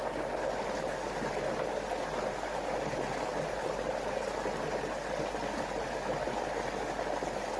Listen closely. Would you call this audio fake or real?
real